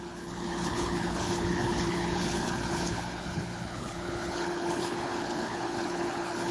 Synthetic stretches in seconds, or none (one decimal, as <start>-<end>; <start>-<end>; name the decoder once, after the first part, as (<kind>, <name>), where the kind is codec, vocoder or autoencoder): 0.0-6.5 (codec, HILCodec)